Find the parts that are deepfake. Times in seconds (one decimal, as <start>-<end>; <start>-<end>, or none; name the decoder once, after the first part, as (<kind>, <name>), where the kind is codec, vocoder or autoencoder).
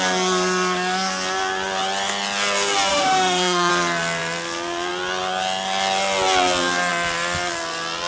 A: 2.9-3.7 (autoencoder, DAC-VAE)